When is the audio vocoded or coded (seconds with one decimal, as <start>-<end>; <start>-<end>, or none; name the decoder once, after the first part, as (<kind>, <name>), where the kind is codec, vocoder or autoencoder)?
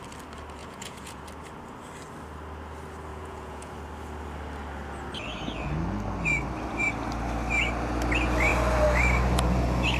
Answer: 0.6-1.2 (vocoder, Vocos); 3.1-3.7